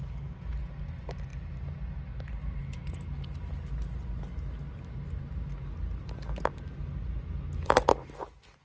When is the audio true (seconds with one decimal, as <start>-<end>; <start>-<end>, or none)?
0.0-8.6